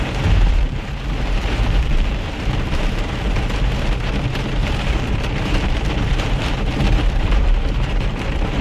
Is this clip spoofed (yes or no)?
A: yes